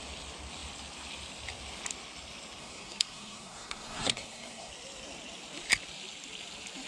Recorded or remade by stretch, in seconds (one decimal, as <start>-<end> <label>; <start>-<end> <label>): 0.0-2.6 recorded; 2.6-4.7 remade; 4.7-6.9 recorded

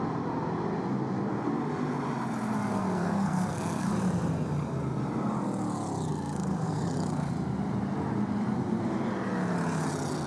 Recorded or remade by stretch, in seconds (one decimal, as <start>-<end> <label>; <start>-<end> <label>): 0.0-2.7 recorded; 2.7-3.9 remade; 3.9-6.1 recorded; 6.1-7.3 remade; 7.3-10.3 recorded

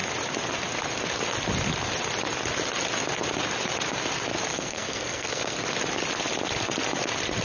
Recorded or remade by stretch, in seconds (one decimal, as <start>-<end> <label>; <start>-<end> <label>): 0.0-4.5 recorded; 4.5-5.6 remade; 5.6-7.4 recorded

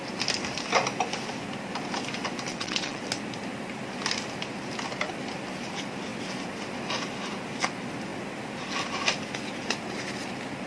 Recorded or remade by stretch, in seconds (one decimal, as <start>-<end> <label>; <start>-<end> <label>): 0.0-2.5 recorded; 2.5-3.0 remade; 3.0-10.7 recorded

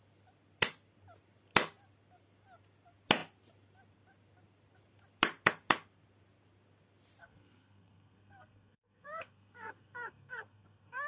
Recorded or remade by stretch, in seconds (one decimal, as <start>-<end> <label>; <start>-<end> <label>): 0.0-7.2 recorded; 7.2-11.1 remade

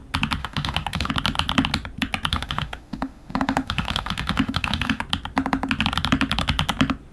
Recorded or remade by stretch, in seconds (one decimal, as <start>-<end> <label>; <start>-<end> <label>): 0.0-0.4 recorded; 0.4-1.1 remade; 1.1-2.3 recorded; 2.3-5.0 remade; 5.0-7.1 recorded